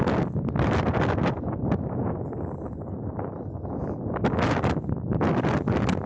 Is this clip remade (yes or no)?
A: no